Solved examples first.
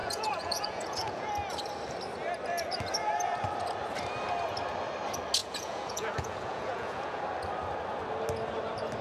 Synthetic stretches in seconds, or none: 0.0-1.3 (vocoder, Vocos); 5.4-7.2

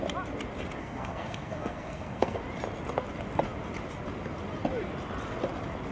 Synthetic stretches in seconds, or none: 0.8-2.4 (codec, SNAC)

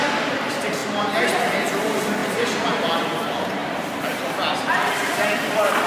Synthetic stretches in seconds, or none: none